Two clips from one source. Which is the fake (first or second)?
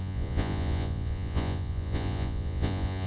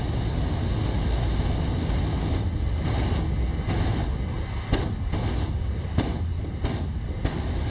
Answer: first